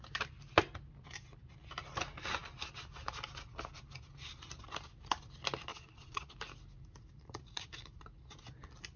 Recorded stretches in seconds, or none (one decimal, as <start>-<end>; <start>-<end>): 0.0-5.7; 6.3-9.0